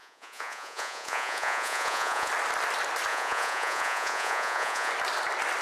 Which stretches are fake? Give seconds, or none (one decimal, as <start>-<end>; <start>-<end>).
0.0-2.3; 3.1-4.9